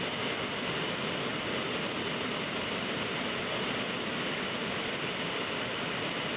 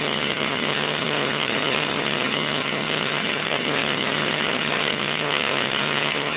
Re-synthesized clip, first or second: second